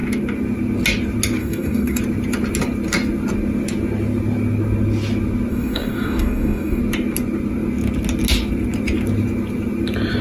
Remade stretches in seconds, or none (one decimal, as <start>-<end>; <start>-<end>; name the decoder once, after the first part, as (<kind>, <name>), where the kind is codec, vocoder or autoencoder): 1.4-2.0 (codec, DAC); 5.5-6.8

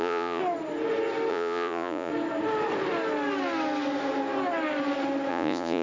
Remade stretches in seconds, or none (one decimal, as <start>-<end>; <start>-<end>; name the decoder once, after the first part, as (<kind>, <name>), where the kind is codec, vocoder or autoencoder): 0.0-0.4 (vocoder, Vocos); 1.3-2.1; 5.3-5.8

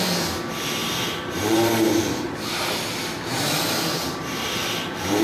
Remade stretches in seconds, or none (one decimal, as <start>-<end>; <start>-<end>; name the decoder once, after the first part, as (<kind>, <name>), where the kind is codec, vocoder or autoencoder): 0.8-2.5 (vocoder, BigVGAN v2); 3.3-5.2

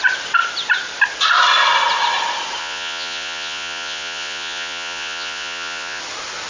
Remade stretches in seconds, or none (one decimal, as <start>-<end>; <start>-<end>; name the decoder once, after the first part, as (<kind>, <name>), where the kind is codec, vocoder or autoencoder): 2.6-6.0 (vocoder, Vocos)

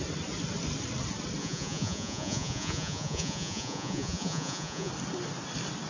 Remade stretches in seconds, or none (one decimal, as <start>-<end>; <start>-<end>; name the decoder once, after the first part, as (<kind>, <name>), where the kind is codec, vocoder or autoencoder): 1.4-4.9 (vocoder, Vocos)

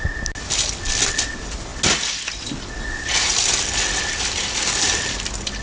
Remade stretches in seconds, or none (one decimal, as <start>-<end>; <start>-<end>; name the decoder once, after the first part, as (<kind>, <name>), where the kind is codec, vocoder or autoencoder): none

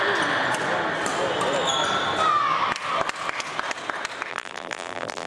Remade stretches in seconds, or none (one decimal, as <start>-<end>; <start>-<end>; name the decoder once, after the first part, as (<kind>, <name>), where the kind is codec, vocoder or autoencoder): 4.3-5.3 (vocoder, BigVGAN v2)